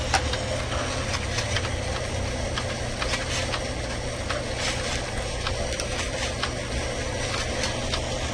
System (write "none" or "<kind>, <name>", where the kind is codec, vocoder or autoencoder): none